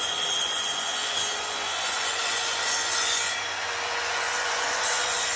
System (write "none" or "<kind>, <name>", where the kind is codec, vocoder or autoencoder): vocoder, Vocos